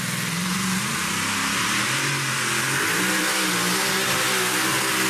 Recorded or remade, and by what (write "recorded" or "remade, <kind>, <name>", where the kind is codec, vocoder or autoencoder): remade, vocoder, BigVGAN v2